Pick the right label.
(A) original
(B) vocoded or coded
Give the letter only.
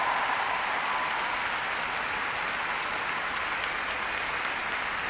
A